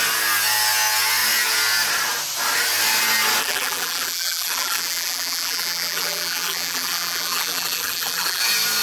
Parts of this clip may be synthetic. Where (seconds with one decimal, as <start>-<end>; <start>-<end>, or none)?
3.4-8.4